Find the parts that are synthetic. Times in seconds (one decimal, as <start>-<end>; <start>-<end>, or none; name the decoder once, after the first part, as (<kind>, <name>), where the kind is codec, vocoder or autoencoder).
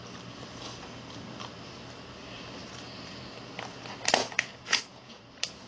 4.2-5.2 (vocoder, Vocos)